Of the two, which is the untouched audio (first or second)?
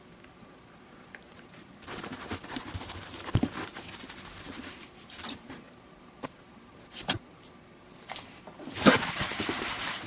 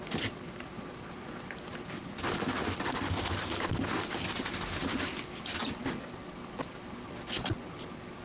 second